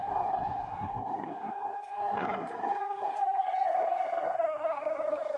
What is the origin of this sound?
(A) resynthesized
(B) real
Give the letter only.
A